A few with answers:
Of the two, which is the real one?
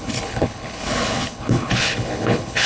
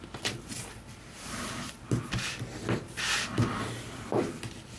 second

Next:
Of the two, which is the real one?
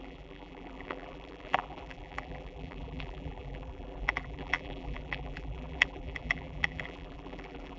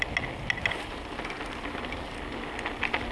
second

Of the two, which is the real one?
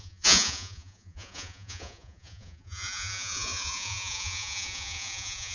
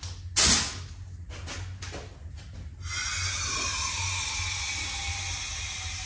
second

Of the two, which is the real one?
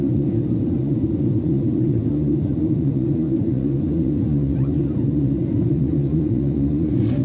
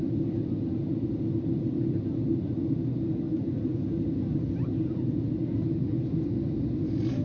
second